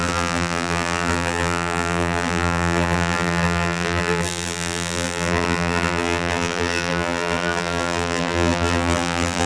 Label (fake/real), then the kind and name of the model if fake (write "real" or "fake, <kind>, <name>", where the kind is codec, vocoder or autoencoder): fake, vocoder, BigVGAN v2